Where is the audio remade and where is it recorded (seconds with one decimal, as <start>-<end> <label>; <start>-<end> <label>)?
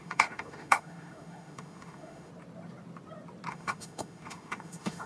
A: 0.0-2.3 remade; 2.3-3.5 recorded; 3.5-5.1 remade